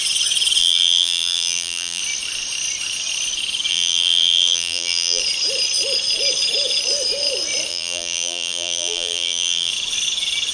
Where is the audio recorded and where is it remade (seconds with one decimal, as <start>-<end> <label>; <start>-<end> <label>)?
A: 0.0-0.6 recorded; 0.6-2.0 remade; 2.0-3.7 recorded; 3.7-5.2 remade; 5.2-7.7 recorded; 7.7-9.7 remade; 9.7-10.5 recorded